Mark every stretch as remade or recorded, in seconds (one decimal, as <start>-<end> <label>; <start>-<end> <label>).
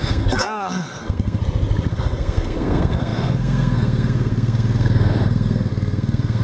0.0-1.4 remade; 1.4-1.9 recorded; 1.9-6.4 remade